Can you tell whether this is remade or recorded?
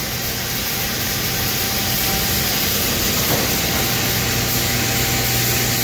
recorded